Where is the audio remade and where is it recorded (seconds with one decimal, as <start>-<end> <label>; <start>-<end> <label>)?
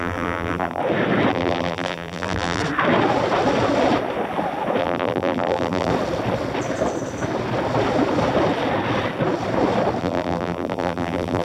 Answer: 0.0-0.8 remade; 0.8-1.3 recorded; 1.3-2.6 remade; 2.6-4.8 recorded; 4.8-5.9 remade; 5.9-10.0 recorded; 10.0-11.4 remade